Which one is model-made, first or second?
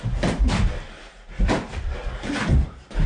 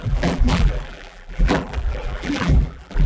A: second